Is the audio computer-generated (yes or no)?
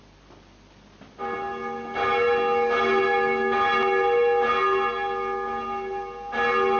no